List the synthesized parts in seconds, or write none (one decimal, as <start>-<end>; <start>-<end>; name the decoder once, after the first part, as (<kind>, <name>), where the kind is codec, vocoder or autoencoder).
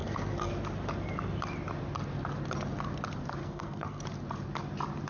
0.0-0.5 (codec, SNAC); 3.4-4.0